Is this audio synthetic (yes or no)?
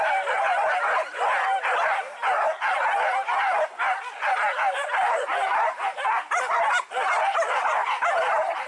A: no